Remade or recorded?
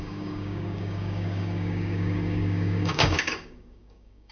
remade